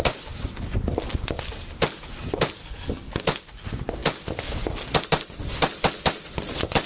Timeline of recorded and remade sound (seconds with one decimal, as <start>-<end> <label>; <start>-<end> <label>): 0.0-2.6 recorded; 2.6-3.1 remade; 3.1-6.9 recorded